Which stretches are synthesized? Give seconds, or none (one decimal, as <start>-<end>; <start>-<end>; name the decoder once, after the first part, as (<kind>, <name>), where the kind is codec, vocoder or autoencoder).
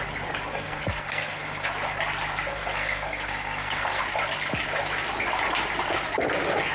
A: 0.5-1.7 (codec, SNAC); 2.5-4.0